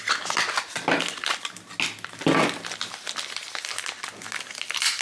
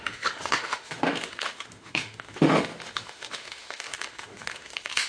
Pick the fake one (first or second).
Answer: second